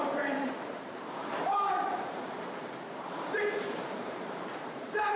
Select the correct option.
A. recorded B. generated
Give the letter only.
B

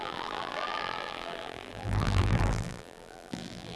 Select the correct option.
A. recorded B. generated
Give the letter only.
B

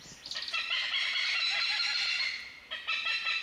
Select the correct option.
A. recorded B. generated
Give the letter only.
A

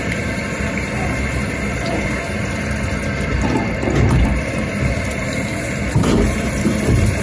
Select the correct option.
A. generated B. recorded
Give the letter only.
A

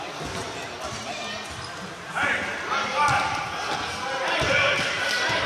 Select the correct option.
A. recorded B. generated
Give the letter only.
A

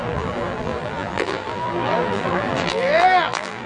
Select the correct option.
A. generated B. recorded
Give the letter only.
A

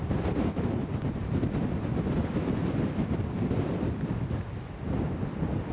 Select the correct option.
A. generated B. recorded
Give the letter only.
B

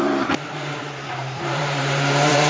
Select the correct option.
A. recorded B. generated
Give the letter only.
B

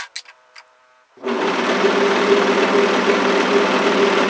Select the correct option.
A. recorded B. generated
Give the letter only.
A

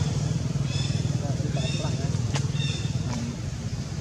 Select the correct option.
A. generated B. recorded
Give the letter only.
A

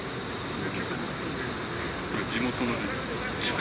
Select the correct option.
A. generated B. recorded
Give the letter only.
B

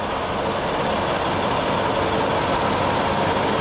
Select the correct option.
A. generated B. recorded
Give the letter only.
B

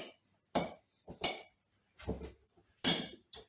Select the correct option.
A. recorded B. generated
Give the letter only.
B